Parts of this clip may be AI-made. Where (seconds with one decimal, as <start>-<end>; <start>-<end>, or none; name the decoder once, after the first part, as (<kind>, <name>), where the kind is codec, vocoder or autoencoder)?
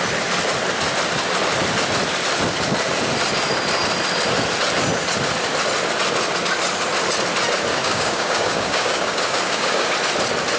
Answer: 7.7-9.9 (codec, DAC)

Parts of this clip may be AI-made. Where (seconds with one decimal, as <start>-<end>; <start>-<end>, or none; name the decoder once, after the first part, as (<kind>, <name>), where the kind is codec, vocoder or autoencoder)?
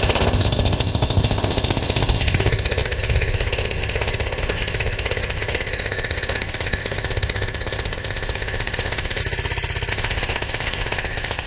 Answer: 0.0-9.2 (codec, ZipCodec); 9.9-11.5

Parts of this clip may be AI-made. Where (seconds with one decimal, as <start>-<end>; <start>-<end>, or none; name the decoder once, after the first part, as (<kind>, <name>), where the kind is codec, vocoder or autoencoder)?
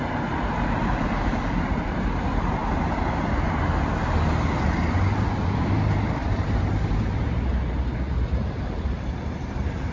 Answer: 0.0-2.6 (vocoder, BigVGAN v2); 5.5-9.9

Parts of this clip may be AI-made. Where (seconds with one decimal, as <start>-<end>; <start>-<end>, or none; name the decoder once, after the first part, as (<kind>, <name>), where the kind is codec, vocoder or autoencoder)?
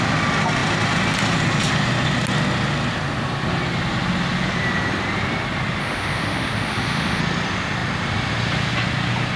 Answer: 5.8-7.2 (autoencoder, DAC-VAE)